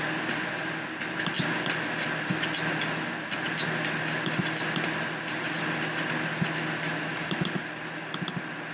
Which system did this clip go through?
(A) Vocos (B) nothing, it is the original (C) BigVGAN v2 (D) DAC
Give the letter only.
B